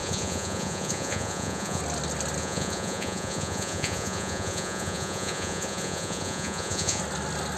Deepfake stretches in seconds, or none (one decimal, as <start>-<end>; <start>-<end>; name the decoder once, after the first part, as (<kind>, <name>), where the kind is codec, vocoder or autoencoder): 0.0-1.8 (vocoder, Vocos); 2.4-7.0